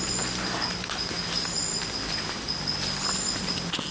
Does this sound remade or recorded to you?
recorded